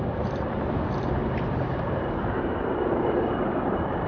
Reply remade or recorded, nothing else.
remade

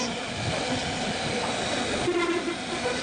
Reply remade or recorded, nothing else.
recorded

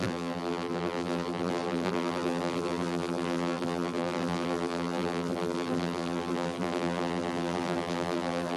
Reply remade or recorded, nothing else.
remade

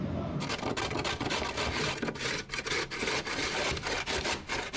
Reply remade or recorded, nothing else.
recorded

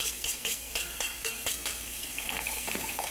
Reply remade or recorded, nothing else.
remade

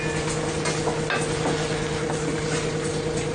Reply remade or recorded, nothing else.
recorded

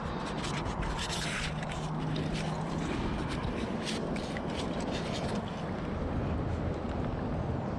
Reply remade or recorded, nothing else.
recorded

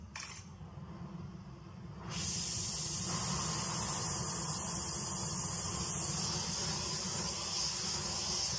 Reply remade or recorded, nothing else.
recorded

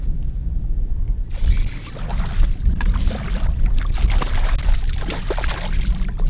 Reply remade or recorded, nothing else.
recorded